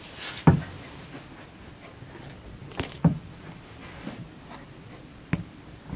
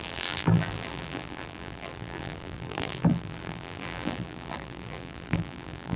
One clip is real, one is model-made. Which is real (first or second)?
first